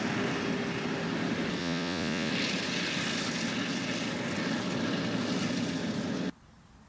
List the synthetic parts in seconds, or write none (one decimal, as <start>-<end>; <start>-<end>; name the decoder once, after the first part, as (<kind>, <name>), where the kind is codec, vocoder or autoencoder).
1.6-2.3 (vocoder, Vocos)